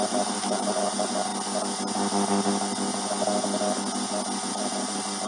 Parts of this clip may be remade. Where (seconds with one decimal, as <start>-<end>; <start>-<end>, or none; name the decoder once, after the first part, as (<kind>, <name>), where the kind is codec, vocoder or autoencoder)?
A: 0.0-1.3 (vocoder, BigVGAN v2); 4.5-5.3